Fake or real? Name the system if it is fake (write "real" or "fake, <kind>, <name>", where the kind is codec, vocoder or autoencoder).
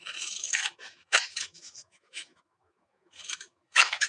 fake, autoencoder, DAC-VAE